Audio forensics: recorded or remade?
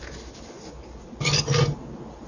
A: recorded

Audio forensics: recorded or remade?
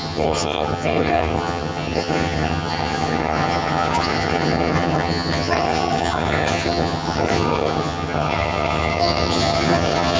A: remade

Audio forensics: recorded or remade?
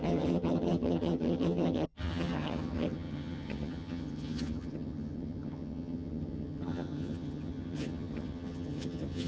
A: remade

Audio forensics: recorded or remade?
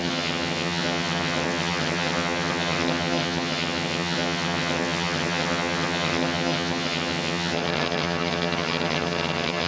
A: remade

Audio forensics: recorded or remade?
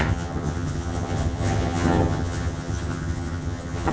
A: remade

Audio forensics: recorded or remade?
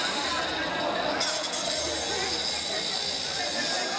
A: recorded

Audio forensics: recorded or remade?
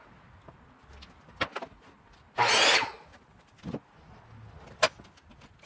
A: recorded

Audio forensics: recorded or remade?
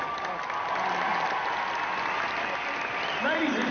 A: recorded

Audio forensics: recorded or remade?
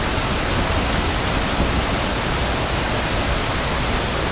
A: recorded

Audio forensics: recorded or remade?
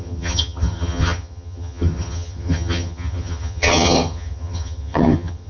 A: remade